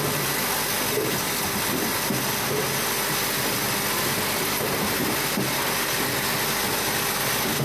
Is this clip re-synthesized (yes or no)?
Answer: no